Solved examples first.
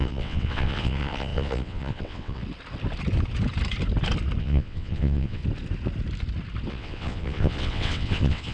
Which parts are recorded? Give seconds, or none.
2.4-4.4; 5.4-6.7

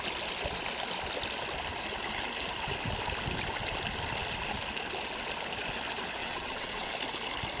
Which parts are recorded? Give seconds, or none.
0.0-6.2; 6.9-7.6

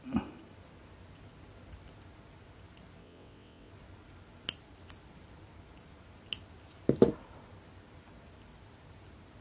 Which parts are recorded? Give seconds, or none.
0.0-3.0; 3.7-9.4

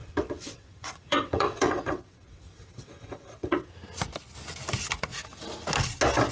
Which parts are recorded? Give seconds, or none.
3.7-6.3